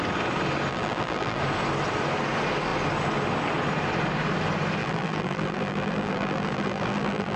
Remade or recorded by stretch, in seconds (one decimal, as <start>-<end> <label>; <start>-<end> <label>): 0.0-0.7 recorded; 0.7-1.4 remade; 1.4-4.8 recorded; 4.8-7.4 remade